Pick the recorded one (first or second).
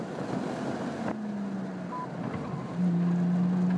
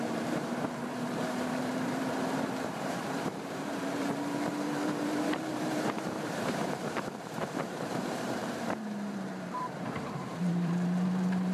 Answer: first